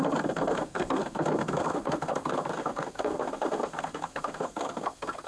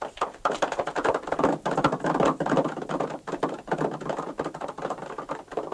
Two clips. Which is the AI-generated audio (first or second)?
first